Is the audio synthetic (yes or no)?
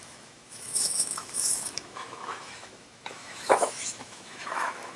yes